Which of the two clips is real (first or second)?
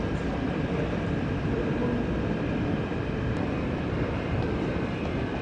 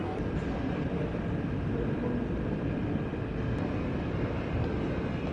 second